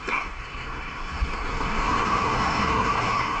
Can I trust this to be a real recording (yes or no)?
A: no